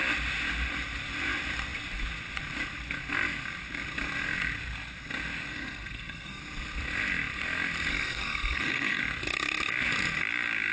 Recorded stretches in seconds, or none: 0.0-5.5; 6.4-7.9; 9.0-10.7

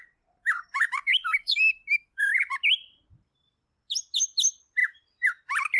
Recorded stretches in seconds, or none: 0.0-0.4; 2.4-5.8

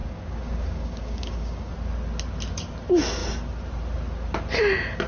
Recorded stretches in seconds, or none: 1.7-5.1

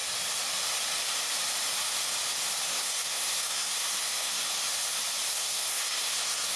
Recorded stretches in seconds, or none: 0.0-2.7; 4.4-5.3

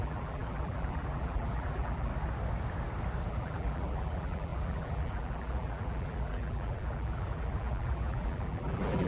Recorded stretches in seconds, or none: 2.1-3.3

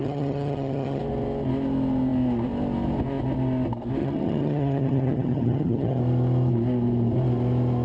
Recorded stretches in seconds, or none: 1.0-4.0; 6.0-7.8

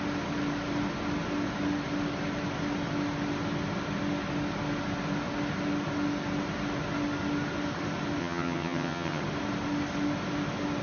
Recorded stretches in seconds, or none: 0.0-8.2; 9.2-10.8